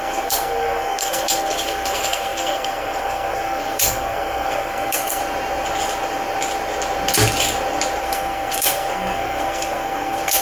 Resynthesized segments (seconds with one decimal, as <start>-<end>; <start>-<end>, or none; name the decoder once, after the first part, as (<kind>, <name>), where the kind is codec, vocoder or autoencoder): 0.0-5.2 (codec, SNAC); 8.0-10.4